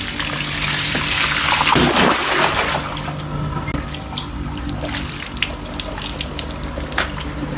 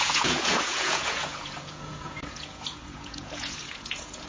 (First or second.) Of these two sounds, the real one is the first